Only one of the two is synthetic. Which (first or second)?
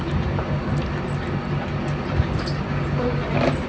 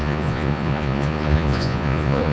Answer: second